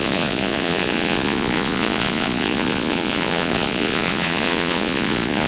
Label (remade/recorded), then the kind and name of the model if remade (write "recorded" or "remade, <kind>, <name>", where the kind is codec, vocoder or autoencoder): remade, vocoder, Vocos